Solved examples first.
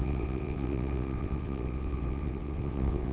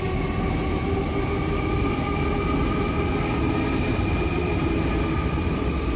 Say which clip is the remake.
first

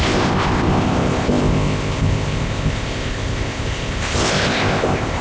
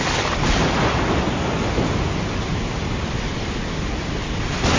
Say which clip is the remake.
first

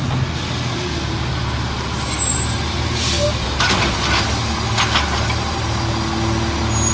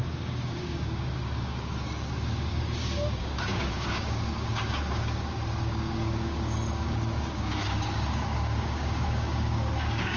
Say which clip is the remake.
second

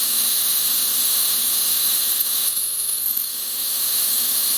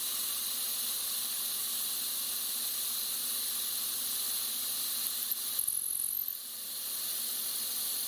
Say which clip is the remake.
first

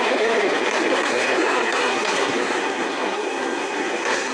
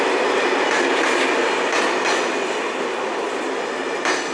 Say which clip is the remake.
first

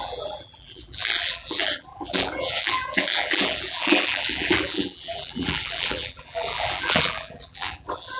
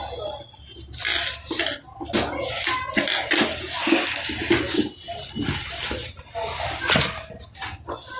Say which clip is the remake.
first